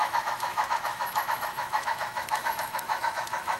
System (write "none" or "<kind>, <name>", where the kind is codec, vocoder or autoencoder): autoencoder, DAC-VAE